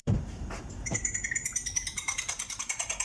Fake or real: fake